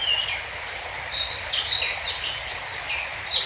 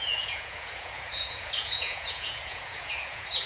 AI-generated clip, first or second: second